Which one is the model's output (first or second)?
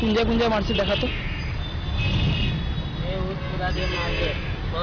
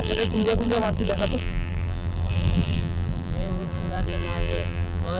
second